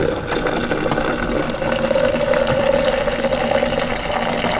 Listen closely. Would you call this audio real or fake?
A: real